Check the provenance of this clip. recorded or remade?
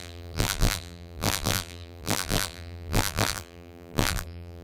remade